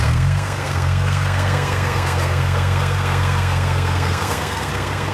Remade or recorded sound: remade